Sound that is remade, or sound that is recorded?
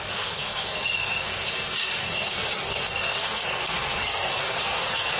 remade